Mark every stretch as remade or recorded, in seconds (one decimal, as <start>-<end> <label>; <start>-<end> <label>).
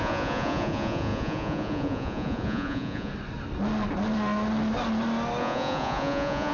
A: 0.0-3.1 remade; 3.1-5.4 recorded; 5.4-6.5 remade